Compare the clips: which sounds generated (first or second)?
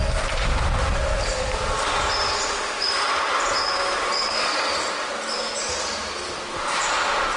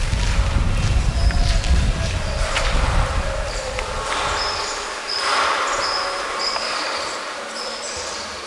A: second